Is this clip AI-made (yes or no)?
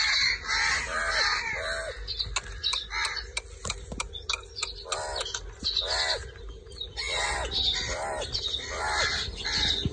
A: no